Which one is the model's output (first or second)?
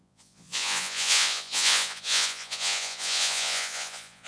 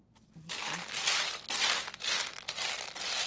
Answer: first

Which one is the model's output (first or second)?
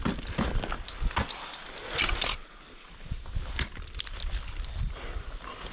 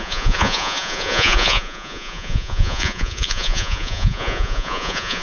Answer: second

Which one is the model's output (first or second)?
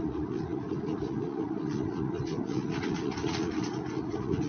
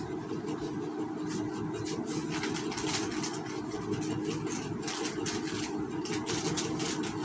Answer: first